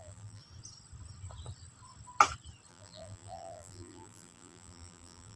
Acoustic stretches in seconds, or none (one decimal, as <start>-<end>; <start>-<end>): 0.4-2.7